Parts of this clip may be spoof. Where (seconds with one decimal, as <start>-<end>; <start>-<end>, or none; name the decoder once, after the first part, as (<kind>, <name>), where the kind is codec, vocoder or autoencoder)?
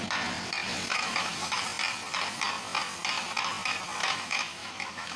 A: 0.9-1.6 (autoencoder, DAC-VAE); 4.0-5.2